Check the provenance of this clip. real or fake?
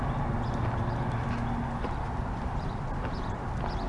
real